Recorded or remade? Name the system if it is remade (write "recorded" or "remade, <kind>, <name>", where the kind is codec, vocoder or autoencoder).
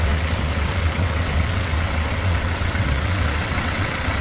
remade, vocoder, WaveNeXt